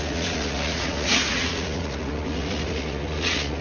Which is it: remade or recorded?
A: remade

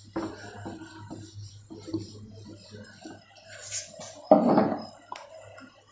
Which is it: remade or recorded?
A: recorded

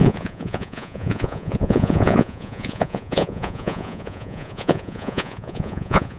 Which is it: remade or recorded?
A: remade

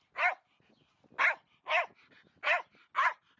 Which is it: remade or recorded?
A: recorded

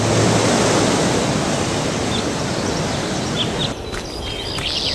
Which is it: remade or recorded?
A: recorded